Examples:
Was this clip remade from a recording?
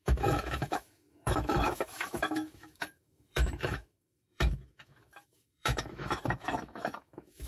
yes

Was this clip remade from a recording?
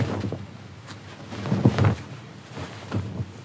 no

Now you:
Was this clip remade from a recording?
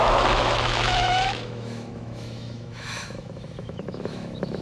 yes